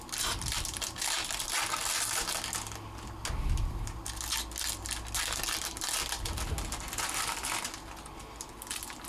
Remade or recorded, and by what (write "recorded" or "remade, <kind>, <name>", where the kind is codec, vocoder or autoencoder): recorded